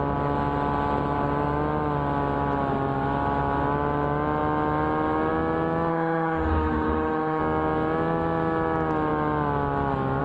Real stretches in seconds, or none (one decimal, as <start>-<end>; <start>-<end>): 0.0-5.9; 7.4-10.2